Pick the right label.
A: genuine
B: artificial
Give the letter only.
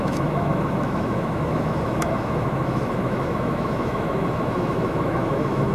B